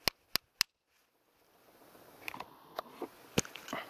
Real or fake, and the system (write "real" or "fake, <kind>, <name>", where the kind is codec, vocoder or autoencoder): real